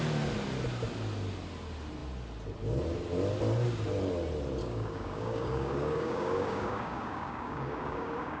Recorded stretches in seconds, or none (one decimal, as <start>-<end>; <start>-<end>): 0.0-4.6